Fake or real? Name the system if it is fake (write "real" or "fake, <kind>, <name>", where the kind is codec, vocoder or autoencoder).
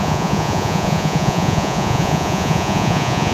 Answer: fake, vocoder, Vocos